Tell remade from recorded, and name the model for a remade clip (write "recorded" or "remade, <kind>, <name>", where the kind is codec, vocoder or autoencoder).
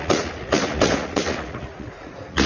remade, vocoder, Vocos